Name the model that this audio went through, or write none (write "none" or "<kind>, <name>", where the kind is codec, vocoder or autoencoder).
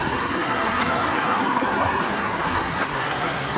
codec, SNAC